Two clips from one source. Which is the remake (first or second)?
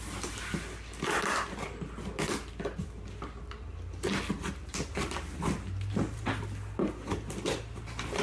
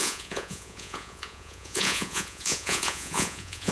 second